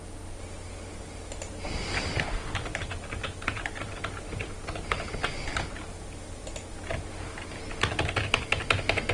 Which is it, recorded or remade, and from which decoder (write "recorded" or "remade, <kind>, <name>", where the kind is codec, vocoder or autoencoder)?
recorded